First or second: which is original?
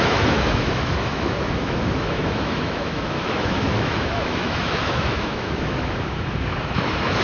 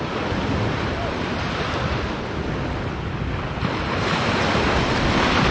second